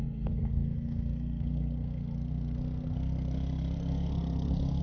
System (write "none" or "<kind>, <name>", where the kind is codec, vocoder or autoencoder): codec, SNAC